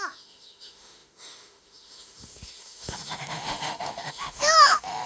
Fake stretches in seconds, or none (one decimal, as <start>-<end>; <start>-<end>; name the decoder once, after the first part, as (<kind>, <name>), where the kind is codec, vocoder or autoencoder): 0.0-5.1 (autoencoder, DAC-VAE)